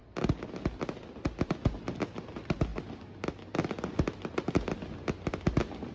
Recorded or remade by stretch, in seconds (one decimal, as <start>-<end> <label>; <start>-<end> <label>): 0.0-5.9 recorded